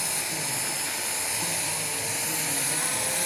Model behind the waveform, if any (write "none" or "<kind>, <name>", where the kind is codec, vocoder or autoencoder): none